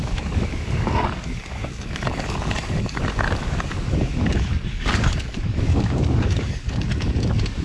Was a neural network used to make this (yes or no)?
yes